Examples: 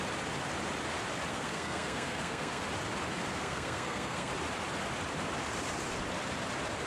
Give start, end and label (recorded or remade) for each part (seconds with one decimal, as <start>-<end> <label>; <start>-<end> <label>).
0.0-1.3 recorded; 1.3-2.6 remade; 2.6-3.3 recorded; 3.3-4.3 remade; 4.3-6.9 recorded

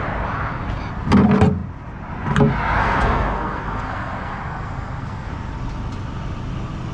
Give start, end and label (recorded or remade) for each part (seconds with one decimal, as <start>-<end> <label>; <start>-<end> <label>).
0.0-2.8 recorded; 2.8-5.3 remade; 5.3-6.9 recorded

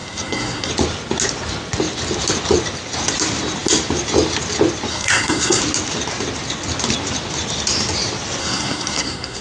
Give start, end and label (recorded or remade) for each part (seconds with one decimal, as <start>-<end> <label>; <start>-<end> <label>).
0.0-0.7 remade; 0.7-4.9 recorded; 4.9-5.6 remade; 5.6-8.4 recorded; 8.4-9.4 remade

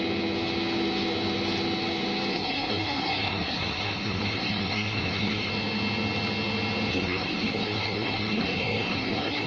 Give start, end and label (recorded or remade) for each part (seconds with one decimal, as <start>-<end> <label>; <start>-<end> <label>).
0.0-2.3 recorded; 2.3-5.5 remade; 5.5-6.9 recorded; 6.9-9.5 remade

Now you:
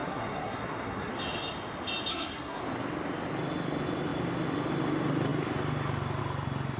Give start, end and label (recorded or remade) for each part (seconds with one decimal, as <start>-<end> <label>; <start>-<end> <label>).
0.0-1.1 remade; 1.1-2.1 recorded; 2.1-2.6 remade; 2.6-6.8 recorded